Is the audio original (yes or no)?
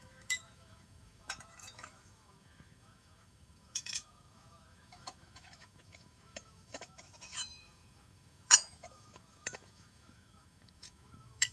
no